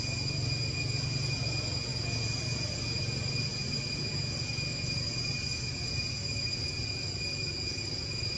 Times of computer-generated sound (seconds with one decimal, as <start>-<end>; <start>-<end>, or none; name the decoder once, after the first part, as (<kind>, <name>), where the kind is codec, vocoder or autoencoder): 0.0-8.4 (vocoder, Vocos)